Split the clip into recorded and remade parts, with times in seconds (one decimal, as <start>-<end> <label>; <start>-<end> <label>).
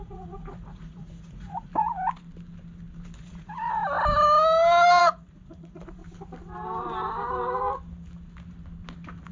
0.0-1.7 remade; 1.7-3.2 recorded; 3.2-3.8 remade; 3.8-5.0 recorded; 5.0-6.0 remade; 6.0-9.3 recorded